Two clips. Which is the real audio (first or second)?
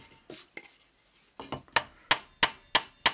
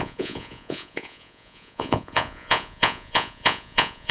first